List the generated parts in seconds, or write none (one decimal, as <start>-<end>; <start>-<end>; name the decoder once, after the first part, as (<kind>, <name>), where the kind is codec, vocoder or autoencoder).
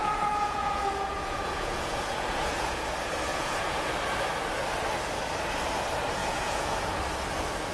0.0-2.8 (vocoder, Vocos); 3.3-3.9; 6.2-7.0